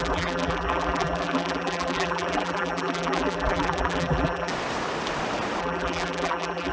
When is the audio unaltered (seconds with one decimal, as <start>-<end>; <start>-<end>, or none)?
4.5-5.6